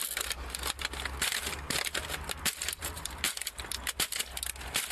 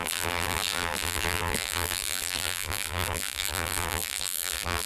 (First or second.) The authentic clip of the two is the first